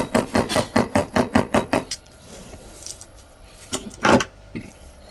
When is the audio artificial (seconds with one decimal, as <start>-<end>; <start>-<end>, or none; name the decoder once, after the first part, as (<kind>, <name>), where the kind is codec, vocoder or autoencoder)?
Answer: 0.0-3.9 (vocoder, Vocos); 4.6-5.1